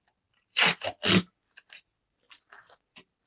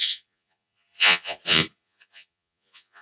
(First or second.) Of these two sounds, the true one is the first